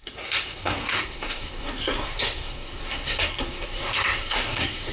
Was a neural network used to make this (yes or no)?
yes